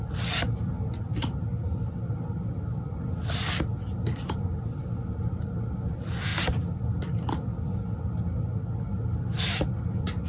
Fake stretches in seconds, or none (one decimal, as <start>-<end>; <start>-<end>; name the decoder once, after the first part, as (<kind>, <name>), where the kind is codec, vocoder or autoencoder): none